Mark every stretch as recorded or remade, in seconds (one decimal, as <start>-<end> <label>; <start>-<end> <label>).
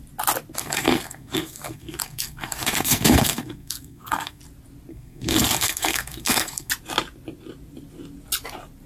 0.0-0.6 recorded; 0.6-4.4 remade; 4.4-4.9 recorded; 4.9-6.7 remade; 6.7-8.9 recorded